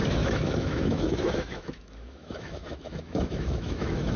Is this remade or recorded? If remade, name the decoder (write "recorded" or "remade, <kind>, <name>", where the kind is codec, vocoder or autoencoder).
remade, autoencoder, DAC-VAE